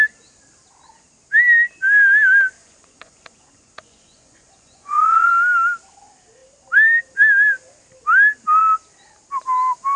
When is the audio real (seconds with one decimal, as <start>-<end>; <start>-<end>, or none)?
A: 0.0-2.6; 5.3-10.0